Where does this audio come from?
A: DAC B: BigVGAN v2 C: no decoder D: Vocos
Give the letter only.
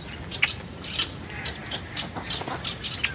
C